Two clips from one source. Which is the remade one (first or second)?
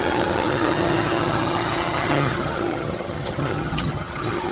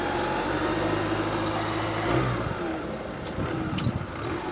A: first